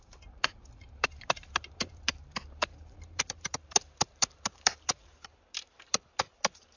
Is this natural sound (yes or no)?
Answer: no